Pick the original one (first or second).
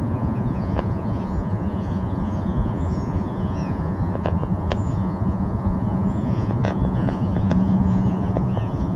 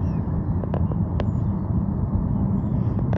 second